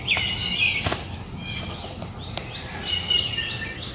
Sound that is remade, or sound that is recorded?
recorded